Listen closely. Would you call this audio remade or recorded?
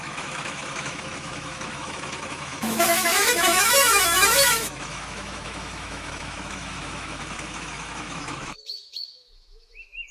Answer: remade